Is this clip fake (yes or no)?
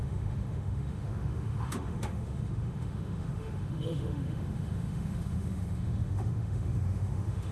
yes